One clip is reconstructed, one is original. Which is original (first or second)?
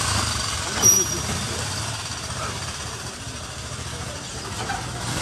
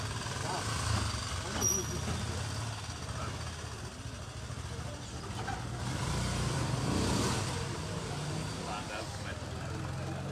second